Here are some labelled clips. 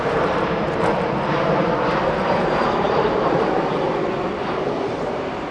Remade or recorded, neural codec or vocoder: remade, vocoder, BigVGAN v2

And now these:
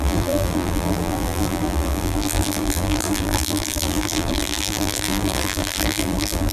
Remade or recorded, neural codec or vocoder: remade, vocoder, BigVGAN v2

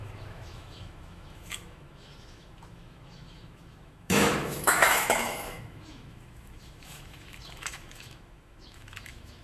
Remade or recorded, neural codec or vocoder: remade, autoencoder, DAC-VAE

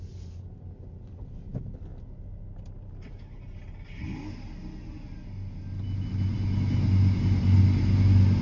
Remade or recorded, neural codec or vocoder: recorded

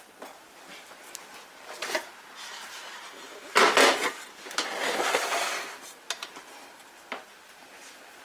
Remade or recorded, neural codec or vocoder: recorded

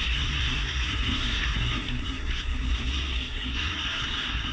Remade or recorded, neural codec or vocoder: remade, codec, SNAC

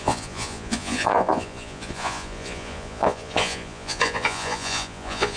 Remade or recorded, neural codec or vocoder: remade, vocoder, Vocos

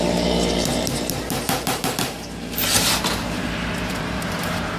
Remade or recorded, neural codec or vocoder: remade, vocoder, BigVGAN v2